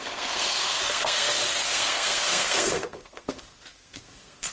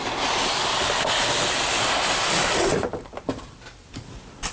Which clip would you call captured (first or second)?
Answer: second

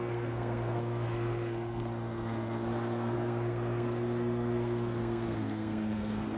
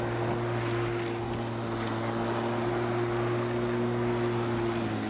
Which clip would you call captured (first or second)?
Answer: second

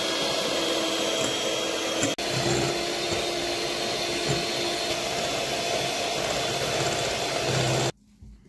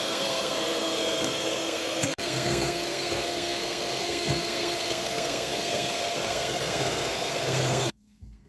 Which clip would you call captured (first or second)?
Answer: first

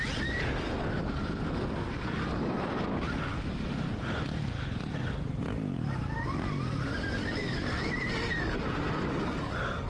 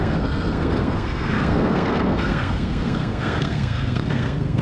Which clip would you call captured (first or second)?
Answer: first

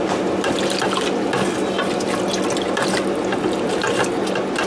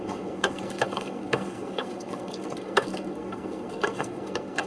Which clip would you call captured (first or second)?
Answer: first